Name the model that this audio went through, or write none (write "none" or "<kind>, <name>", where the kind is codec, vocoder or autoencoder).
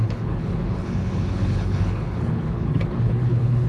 codec, HILCodec